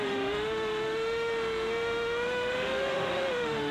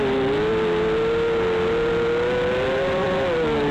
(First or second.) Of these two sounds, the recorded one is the second